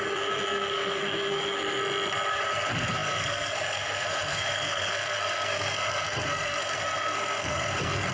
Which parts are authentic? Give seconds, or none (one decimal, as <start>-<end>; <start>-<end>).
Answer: 1.8-2.3